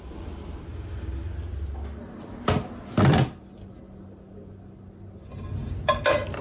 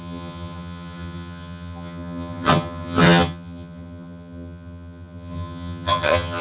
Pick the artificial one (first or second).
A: second